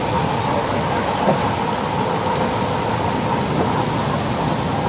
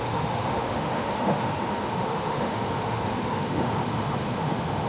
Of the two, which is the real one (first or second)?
first